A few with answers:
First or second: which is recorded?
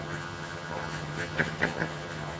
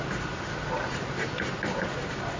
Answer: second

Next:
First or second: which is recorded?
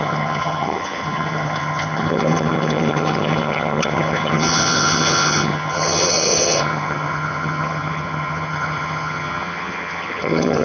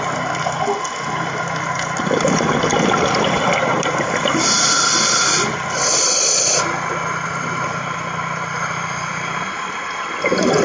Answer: second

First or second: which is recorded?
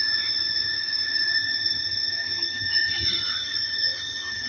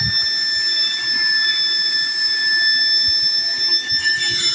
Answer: second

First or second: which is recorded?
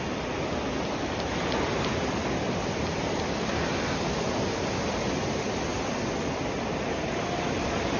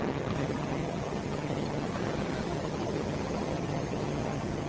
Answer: first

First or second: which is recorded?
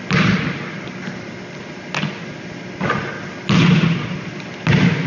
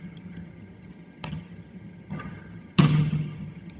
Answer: first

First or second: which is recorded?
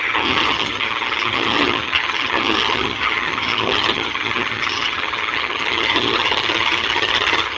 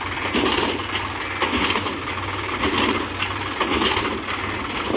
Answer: second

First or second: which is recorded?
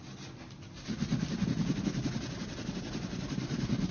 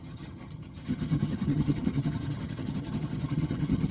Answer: first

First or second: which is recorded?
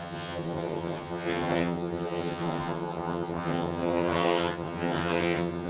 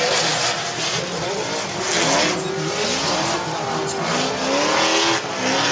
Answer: second